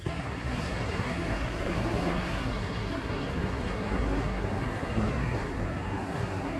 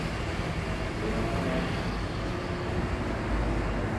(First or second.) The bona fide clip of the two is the second